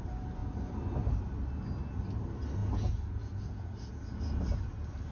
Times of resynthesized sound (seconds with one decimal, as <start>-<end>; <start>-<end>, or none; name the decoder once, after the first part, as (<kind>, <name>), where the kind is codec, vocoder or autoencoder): 2.6-4.2 (vocoder, Vocos)